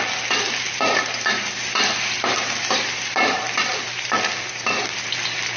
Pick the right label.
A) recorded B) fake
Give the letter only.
A